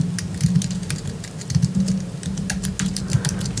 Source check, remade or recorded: recorded